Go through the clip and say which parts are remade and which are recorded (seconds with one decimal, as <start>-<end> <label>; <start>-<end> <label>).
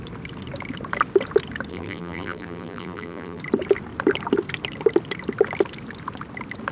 0.0-1.7 recorded; 1.7-3.4 remade; 3.4-6.7 recorded